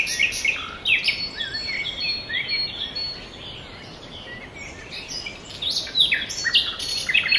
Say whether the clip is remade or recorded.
recorded